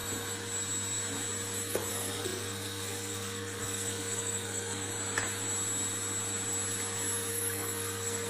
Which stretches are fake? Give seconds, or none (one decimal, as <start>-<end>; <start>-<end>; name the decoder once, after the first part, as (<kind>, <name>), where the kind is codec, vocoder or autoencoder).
1.9-4.9 (codec, SNAC); 7.3-8.3